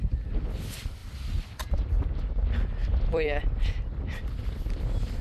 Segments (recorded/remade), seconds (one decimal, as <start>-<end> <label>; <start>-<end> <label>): 0.0-1.0 recorded; 1.0-2.0 remade; 2.0-2.8 recorded; 2.8-3.4 remade; 3.4-5.2 recorded